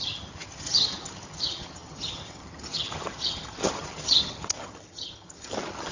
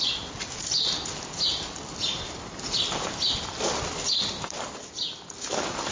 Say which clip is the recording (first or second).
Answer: second